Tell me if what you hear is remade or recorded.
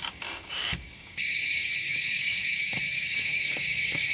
remade